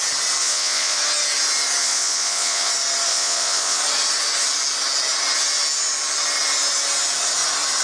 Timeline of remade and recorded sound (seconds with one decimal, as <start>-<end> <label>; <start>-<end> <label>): 0.0-0.4 recorded; 0.4-1.0 remade; 1.0-1.8 recorded; 1.8-2.7 remade; 2.7-3.1 recorded; 3.1-3.8 remade; 3.8-7.8 recorded